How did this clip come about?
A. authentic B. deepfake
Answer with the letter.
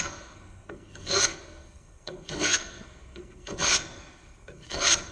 B